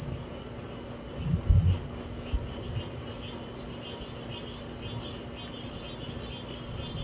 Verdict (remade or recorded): recorded